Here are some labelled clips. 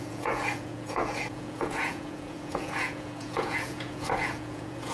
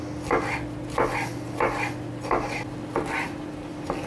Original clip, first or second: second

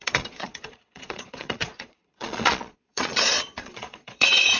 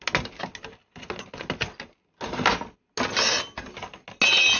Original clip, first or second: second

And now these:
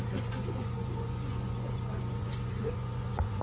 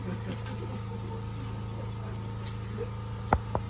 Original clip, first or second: second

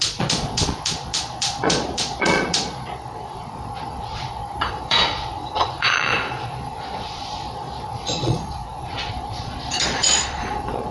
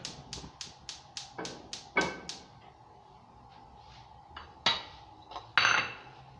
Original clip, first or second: second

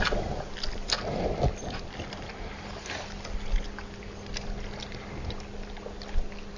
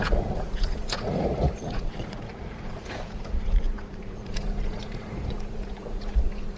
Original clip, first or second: first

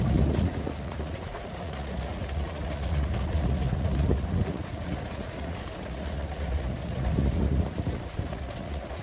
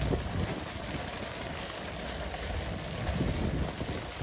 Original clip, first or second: second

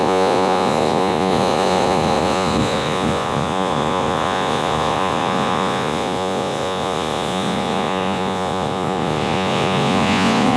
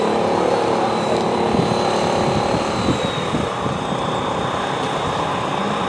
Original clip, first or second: second